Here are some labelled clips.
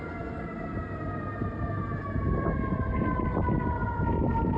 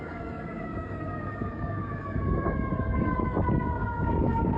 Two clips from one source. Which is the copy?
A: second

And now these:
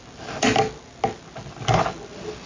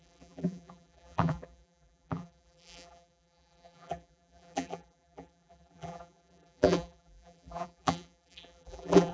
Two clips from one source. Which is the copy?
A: second